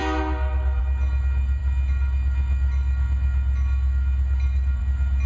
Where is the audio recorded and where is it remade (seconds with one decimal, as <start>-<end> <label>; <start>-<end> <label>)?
0.0-5.3 recorded